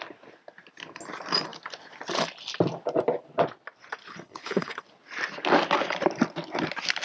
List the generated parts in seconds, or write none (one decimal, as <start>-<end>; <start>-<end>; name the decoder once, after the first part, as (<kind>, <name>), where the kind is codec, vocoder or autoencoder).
4.0-4.8 (codec, HILCodec)